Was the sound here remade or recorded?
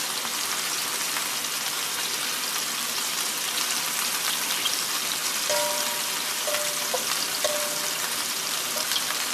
remade